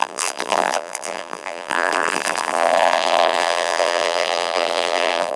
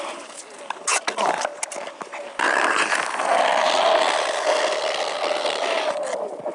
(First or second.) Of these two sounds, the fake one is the first